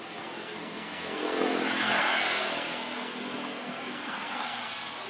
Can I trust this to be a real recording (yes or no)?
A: no